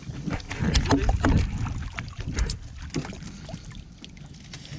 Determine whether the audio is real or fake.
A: real